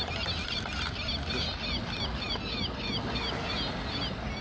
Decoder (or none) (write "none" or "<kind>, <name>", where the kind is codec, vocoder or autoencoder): none